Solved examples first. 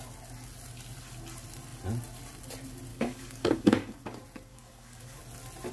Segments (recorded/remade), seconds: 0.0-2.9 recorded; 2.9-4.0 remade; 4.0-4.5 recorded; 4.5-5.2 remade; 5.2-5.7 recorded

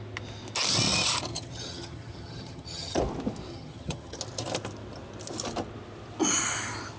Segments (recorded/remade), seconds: 0.0-1.3 recorded; 1.3-3.0 remade; 3.0-3.5 recorded; 3.5-4.2 remade; 4.2-7.0 recorded

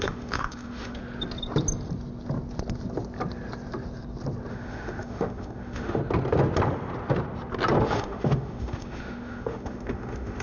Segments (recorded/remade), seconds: 0.0-1.0 remade; 1.0-4.5 recorded; 4.5-6.0 remade; 6.0-7.8 recorded; 7.8-10.4 remade

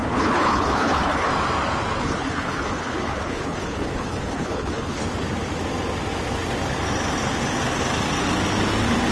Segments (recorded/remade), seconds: 0.0-1.3 remade; 1.3-2.0 recorded; 2.0-5.0 remade; 5.0-9.1 recorded

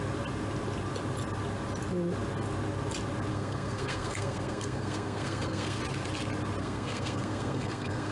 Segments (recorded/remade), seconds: 0.0-3.3 recorded; 3.3-5.8 remade; 5.8-6.6 recorded; 6.6-8.1 remade